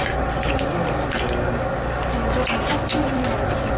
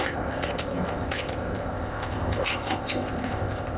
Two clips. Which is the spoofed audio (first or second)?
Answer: second